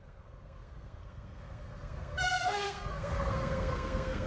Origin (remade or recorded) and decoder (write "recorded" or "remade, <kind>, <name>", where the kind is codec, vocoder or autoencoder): remade, codec, SNAC